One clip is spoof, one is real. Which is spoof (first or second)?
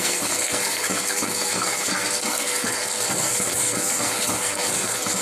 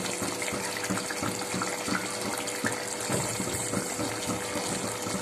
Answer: first